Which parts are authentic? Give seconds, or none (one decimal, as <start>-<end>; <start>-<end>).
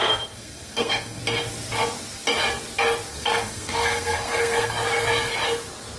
1.2-3.1; 4.7-6.0